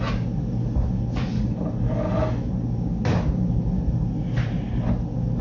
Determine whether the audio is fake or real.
real